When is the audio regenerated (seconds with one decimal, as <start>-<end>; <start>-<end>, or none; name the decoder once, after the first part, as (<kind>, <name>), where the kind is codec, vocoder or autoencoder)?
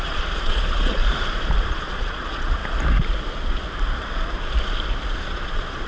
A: 0.0-1.0 (vocoder, Vocos); 1.7-2.6; 5.2-5.9